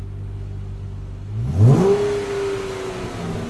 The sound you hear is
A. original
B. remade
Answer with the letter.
A